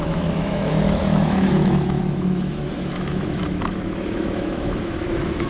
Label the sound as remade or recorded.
remade